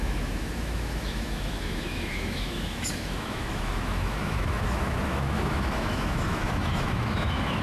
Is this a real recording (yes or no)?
no